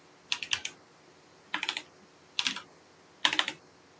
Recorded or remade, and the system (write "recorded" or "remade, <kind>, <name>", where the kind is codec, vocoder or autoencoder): recorded